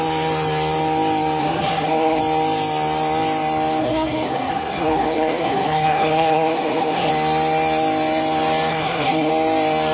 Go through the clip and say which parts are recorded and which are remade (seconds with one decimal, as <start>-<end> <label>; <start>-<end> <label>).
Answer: 0.0-1.4 recorded; 1.4-2.2 remade; 2.2-3.8 recorded; 3.8-7.1 remade; 7.1-8.7 recorded; 8.7-9.3 remade; 9.3-9.9 recorded